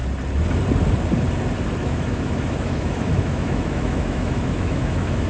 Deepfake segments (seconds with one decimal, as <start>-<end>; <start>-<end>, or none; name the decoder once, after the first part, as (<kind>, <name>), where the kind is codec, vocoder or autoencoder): 1.8-5.3 (autoencoder, DAC-VAE)